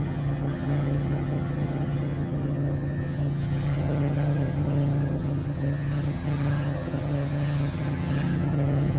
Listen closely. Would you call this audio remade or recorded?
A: remade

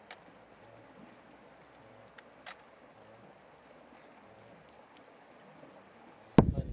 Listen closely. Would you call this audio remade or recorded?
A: recorded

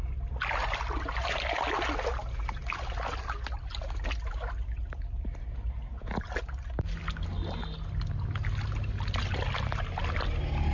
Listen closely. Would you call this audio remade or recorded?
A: recorded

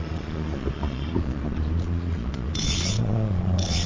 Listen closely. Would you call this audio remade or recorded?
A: remade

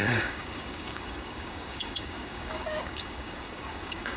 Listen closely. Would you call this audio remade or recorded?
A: remade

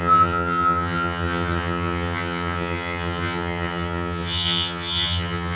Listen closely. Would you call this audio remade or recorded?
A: remade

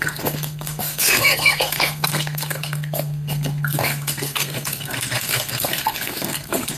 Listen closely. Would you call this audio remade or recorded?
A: remade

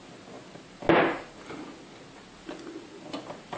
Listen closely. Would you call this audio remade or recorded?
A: recorded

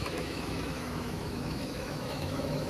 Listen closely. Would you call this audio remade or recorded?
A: remade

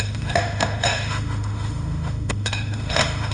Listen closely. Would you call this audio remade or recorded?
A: remade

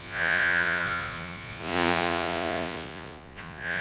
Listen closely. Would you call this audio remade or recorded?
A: remade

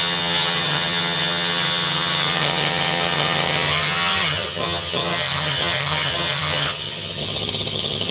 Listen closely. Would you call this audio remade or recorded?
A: remade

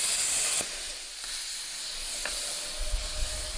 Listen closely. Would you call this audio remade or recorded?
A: recorded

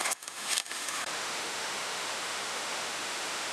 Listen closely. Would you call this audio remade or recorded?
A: remade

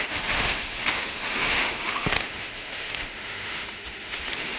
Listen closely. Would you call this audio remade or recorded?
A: remade